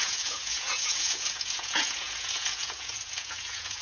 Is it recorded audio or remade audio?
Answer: remade